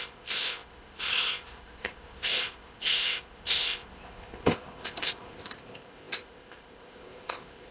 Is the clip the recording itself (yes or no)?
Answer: no